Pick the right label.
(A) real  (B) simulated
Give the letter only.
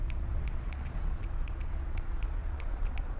B